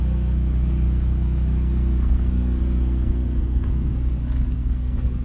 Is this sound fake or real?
fake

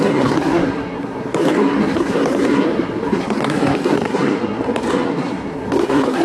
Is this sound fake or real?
fake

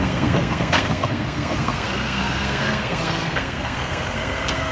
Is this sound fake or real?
fake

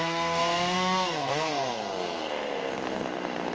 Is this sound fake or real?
fake